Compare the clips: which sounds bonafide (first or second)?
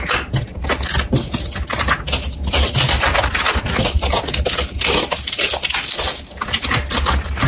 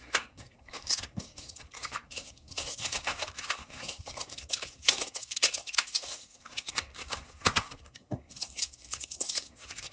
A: first